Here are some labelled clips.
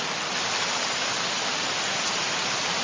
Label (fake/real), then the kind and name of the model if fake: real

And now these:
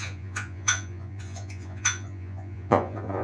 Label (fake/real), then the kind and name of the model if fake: fake, vocoder, Vocos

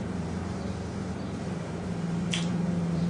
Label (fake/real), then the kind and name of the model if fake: fake, vocoder, BigVGAN v2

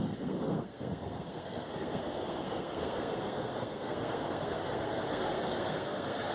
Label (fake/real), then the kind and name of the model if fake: fake, codec, SNAC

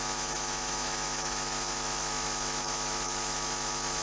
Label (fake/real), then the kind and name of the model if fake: fake, autoencoder, DAC-VAE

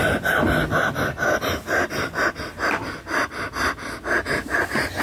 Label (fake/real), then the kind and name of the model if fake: real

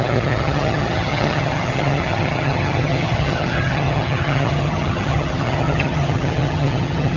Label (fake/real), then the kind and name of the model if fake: fake, vocoder, HiFi-GAN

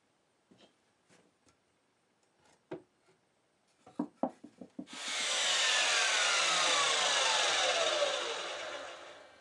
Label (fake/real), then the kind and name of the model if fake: real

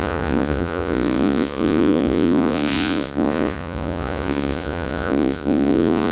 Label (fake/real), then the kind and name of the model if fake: fake, vocoder, Vocos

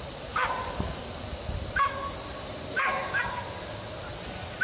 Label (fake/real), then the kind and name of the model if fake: real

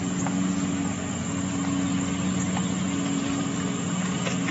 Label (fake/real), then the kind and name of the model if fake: real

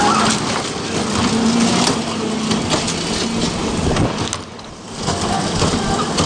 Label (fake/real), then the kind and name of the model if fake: real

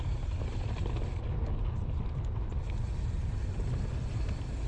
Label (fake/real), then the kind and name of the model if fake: real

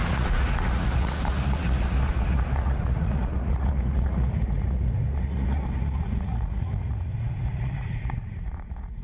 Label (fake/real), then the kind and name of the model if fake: fake, vocoder, Vocos